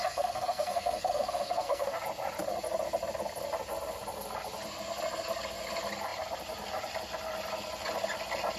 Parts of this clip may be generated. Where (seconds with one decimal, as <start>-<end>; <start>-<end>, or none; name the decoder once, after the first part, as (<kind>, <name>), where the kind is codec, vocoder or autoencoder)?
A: 0.0-2.0 (codec, SNAC)